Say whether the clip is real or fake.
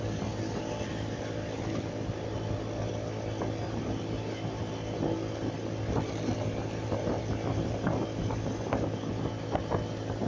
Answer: real